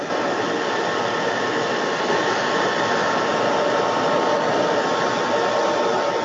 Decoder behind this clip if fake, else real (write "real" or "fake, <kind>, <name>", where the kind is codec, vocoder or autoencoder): real